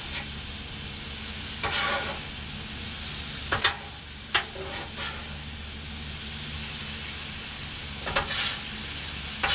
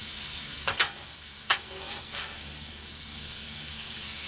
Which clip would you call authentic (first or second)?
first